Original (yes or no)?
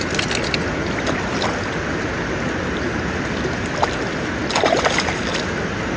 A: yes